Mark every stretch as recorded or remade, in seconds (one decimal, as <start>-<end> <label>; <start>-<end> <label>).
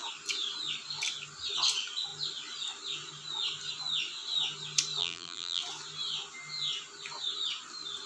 0.0-5.0 recorded; 5.0-5.6 remade; 5.6-8.1 recorded